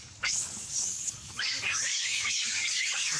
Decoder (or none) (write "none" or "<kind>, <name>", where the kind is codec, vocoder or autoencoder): codec, DAC